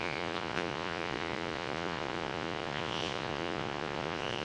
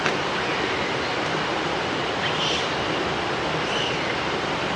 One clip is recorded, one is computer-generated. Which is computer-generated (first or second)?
first